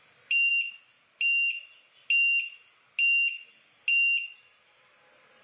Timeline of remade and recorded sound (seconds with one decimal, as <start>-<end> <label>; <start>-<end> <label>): 0.0-5.4 recorded